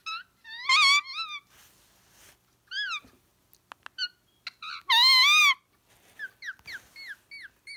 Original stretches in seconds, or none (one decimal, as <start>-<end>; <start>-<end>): 0.0-7.8